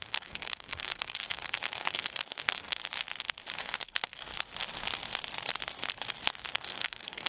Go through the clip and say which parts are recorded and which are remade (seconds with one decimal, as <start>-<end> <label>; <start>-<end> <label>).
0.0-2.8 remade; 2.8-3.6 recorded; 3.6-4.3 remade; 4.3-6.3 recorded; 6.3-7.3 remade